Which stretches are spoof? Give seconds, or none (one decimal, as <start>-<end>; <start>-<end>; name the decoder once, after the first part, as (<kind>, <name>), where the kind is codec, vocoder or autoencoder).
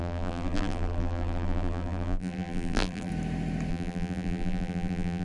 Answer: 0.0-3.1 (vocoder, BigVGAN v2); 3.7-5.2